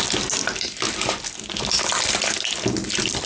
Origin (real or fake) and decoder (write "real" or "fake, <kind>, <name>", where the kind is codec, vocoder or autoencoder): real